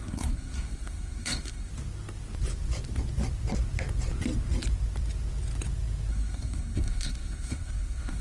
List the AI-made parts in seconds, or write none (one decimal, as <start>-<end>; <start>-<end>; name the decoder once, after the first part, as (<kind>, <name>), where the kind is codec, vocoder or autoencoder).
0.0-1.7 (codec, SNAC); 6.1-8.2